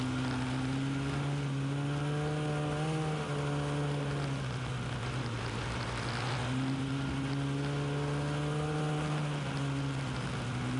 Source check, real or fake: real